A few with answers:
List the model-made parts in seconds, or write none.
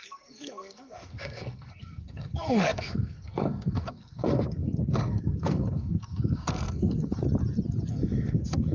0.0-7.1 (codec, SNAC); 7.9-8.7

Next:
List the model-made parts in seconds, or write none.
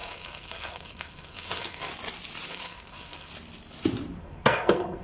0.0-1.9 (codec, SNAC); 2.5-3.3; 4.2-5.0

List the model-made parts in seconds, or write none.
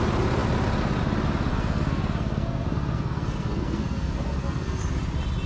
1.5-4.8 (codec, SNAC)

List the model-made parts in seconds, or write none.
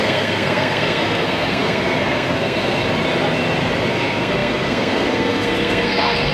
0.0-2.8 (codec, SNAC); 3.9-6.3